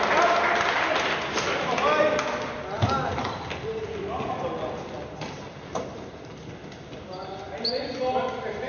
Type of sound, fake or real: real